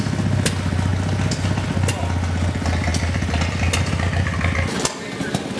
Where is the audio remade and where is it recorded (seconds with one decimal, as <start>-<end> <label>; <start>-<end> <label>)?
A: 0.0-5.6 recorded